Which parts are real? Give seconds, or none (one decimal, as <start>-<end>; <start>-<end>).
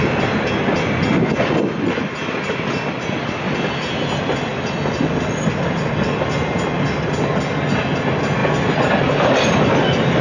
0.0-10.2